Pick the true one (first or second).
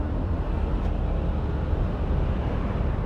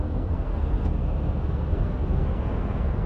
first